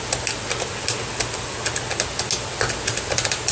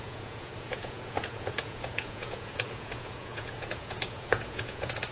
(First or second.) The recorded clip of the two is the first